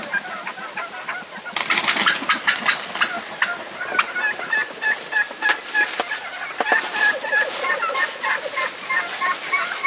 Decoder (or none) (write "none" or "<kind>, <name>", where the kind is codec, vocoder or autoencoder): none